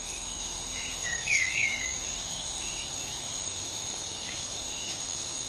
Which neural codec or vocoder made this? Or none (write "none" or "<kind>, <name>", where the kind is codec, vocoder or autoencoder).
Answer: autoencoder, DAC-VAE